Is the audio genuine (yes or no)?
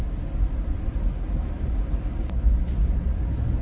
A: yes